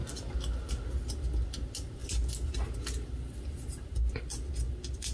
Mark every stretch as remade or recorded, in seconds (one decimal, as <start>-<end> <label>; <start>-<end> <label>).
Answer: 0.0-5.1 recorded